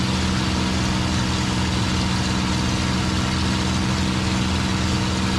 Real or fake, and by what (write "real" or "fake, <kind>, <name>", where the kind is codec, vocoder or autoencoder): real